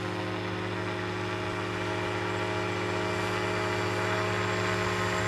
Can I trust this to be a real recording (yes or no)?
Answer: yes